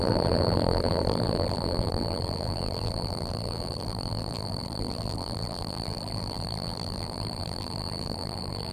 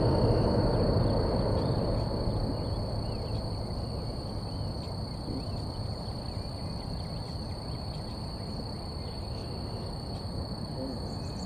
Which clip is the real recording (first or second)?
second